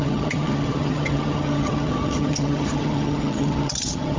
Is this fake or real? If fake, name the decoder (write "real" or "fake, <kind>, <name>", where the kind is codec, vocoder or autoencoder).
fake, vocoder, HiFi-GAN